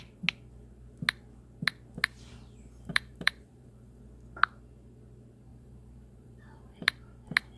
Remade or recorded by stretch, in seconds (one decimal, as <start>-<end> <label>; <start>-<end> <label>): 0.0-2.9 recorded; 2.9-4.0 remade; 4.0-5.5 recorded; 5.5-6.8 remade; 6.8-7.6 recorded